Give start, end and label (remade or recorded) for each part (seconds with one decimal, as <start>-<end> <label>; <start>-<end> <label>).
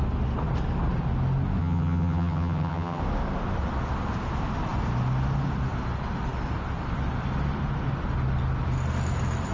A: 0.0-1.6 recorded; 1.6-3.0 remade; 3.0-9.5 recorded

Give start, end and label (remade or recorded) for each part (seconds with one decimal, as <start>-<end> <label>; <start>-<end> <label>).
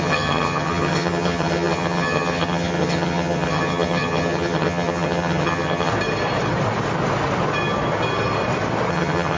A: 0.0-5.9 remade; 5.9-8.9 recorded; 8.9-9.4 remade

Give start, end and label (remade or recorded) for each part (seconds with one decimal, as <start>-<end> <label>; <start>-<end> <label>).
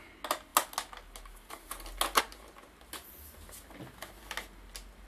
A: 0.0-5.1 recorded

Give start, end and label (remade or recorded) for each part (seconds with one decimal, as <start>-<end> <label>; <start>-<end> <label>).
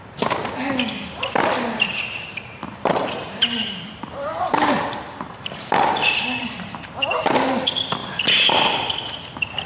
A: 0.0-2.6 recorded; 2.6-7.5 remade; 7.5-9.7 recorded